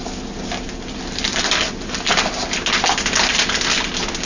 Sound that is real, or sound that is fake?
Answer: real